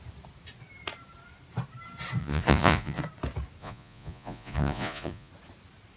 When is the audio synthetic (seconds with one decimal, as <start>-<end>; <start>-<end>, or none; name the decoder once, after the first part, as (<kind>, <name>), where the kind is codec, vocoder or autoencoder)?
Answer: 2.2-3.0 (vocoder, Vocos); 3.6-5.3